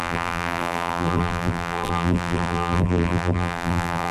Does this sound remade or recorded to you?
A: remade